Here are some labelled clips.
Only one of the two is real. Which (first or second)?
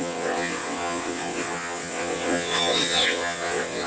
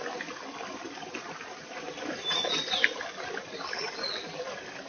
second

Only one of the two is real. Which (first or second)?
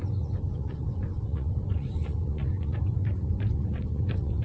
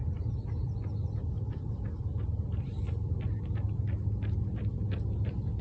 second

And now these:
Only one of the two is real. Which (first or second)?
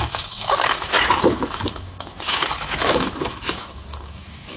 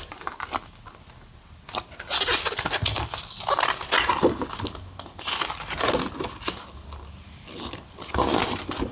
second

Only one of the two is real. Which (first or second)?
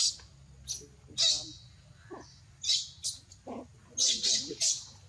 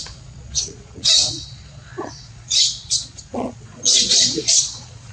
first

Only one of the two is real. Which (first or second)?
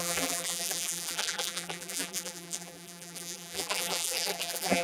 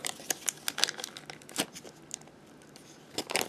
second